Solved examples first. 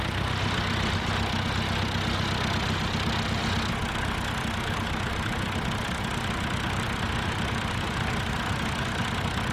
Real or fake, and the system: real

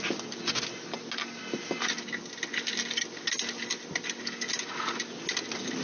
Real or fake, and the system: real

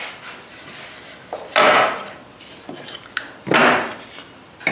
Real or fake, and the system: real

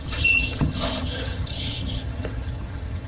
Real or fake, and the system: fake, vocoder, HiFi-GAN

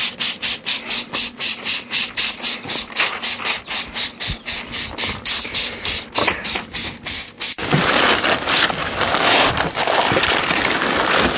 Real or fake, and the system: real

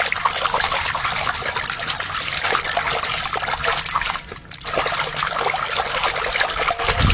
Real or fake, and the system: real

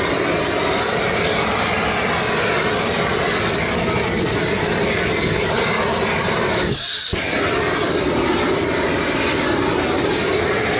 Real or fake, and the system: real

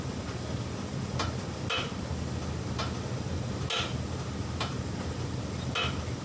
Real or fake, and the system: real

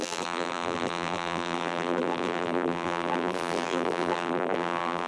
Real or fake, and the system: fake, vocoder, BigVGAN v2